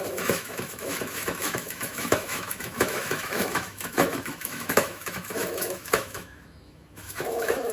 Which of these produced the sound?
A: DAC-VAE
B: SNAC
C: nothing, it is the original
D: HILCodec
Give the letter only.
A